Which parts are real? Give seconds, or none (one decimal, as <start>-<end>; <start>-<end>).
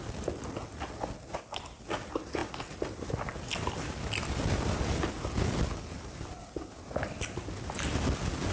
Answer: 0.0-8.5